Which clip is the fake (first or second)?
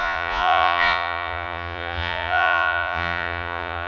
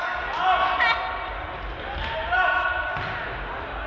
first